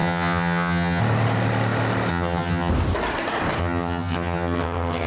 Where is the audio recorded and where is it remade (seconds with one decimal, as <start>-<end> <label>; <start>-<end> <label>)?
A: 0.0-1.0 remade; 1.0-2.1 recorded; 2.1-2.7 remade; 2.7-3.6 recorded; 3.6-5.1 remade